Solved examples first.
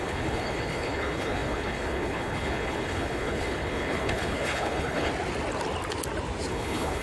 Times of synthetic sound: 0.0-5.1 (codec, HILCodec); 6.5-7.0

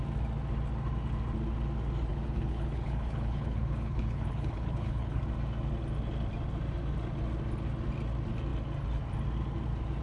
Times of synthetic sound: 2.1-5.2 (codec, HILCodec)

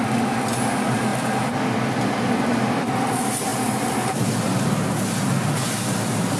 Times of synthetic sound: none

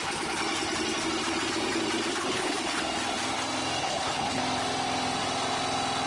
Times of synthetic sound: 2.1-2.8 (codec, HILCodec); 3.8-4.4

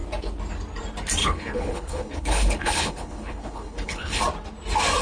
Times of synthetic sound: 1.2-4.2 (codec, HILCodec)